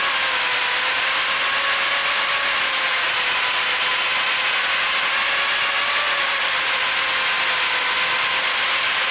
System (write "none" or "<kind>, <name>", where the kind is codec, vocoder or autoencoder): none